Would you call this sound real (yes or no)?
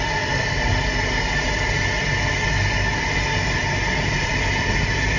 yes